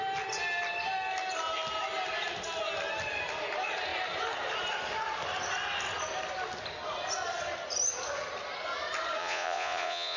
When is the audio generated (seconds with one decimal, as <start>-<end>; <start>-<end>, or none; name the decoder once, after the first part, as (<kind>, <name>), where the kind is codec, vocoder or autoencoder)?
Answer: 9.2-10.2 (vocoder, Vocos)